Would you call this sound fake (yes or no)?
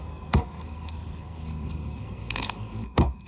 yes